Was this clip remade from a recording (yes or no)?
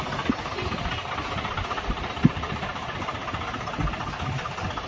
no